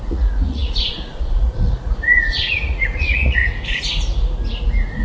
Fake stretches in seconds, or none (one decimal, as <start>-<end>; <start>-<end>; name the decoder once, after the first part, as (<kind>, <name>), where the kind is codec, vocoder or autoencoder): 0.0-3.4 (vocoder, Vocos)